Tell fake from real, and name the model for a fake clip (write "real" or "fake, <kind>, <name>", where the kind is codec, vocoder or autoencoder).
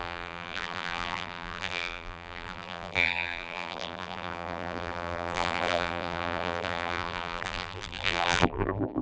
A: fake, vocoder, BigVGAN v2